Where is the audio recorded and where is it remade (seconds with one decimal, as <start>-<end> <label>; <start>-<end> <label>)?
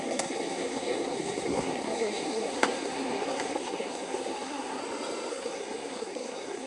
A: 0.0-4.8 remade; 4.8-5.3 recorded; 5.3-6.7 remade